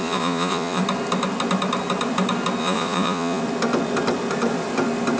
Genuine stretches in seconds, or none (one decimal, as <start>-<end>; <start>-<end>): 0.8-2.6; 3.4-5.2